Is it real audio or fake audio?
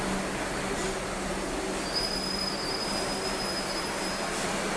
real